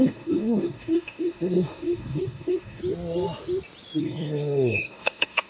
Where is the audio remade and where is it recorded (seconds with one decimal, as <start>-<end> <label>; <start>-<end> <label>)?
0.0-2.8 remade; 2.8-4.0 recorded; 4.0-5.5 remade